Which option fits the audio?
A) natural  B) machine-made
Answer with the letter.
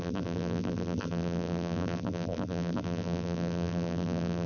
B